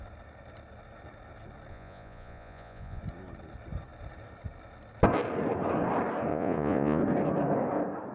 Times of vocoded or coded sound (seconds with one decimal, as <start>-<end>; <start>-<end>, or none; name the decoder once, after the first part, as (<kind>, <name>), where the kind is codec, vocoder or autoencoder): 1.7-3.0 (vocoder, Vocos); 6.3-7.0